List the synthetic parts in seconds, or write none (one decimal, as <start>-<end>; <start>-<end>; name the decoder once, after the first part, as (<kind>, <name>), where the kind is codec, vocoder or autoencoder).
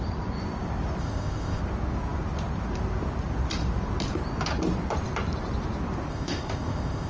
1.0-1.6 (codec, ZipCodec); 6.1-7.1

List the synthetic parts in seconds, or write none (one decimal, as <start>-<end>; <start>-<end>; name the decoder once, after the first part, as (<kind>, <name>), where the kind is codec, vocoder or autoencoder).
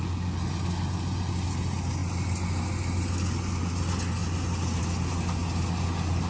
none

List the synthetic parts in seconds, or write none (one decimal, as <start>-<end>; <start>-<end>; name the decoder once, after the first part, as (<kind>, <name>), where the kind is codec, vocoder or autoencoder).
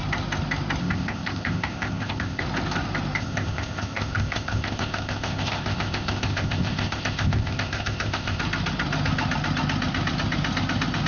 0.8-2.4 (codec, ZipCodec); 3.2-8.4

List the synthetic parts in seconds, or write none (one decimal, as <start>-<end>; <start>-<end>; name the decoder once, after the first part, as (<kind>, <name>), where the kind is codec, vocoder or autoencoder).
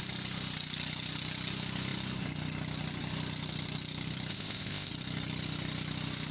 4.3-4.9 (codec, ZipCodec)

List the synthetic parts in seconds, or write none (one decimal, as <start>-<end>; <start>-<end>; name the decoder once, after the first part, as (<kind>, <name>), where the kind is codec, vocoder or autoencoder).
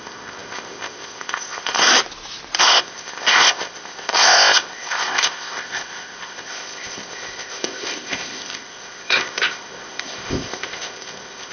0.0-1.9 (codec, ZipCodec); 2.6-11.5